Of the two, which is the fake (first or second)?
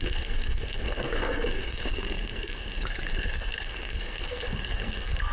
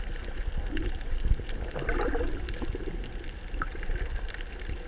first